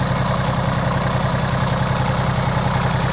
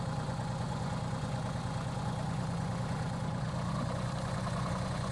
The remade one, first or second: second